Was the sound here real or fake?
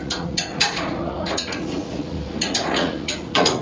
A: fake